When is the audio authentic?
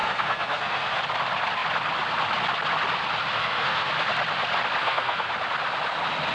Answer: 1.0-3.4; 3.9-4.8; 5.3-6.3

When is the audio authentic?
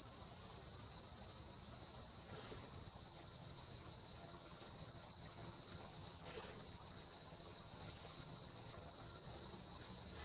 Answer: 0.0-2.3; 3.6-4.2; 9.3-10.2